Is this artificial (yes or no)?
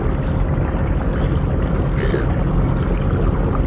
no